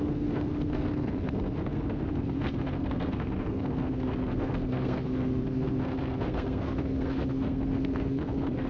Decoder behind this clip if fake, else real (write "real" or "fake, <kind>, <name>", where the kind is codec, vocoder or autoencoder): fake, codec, SNAC